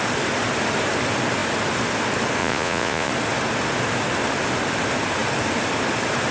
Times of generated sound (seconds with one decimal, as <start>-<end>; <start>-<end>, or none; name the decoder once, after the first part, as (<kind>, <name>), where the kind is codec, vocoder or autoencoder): 2.4-3.1 (vocoder, Vocos)